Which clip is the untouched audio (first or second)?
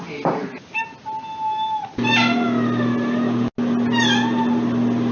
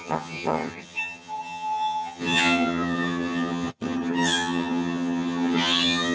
first